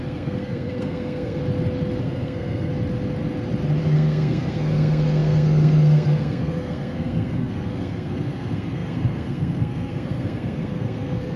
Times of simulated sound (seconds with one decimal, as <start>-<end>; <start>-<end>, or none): 0.0-1.4; 2.0-2.7; 3.8-11.4